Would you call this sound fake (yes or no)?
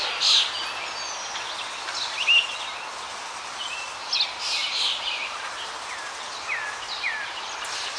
no